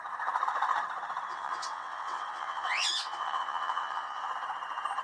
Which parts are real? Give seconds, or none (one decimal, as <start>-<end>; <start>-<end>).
0.0-1.3; 4.3-5.0